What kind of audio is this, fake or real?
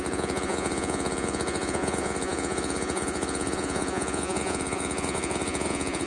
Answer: fake